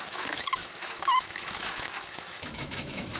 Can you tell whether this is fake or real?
fake